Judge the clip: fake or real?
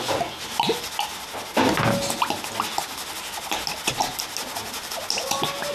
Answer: real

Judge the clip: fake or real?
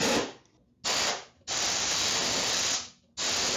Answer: real